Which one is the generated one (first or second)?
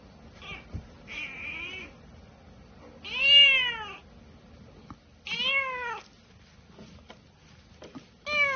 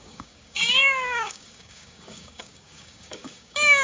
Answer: second